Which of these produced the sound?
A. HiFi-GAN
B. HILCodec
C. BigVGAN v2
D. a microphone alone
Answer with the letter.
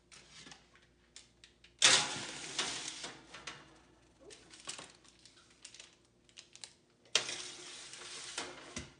D